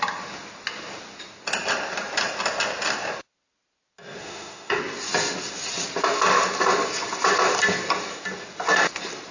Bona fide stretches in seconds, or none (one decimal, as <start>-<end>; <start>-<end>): 0.0-4.2; 4.8-9.3